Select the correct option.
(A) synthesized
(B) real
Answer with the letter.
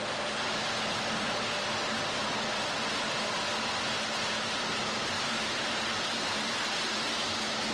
B